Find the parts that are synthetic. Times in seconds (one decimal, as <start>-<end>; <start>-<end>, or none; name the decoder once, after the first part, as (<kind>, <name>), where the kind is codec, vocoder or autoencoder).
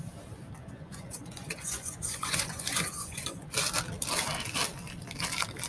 0.6-3.5 (vocoder, Vocos)